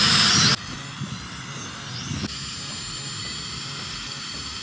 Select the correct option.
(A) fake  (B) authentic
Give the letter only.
B